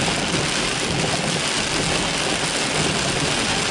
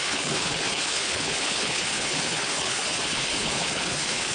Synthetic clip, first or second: second